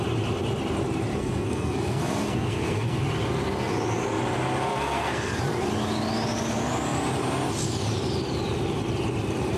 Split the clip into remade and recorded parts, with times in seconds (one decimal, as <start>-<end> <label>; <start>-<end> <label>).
0.0-1.1 recorded; 1.1-3.0 remade; 3.0-4.7 recorded; 4.7-5.4 remade; 5.4-9.6 recorded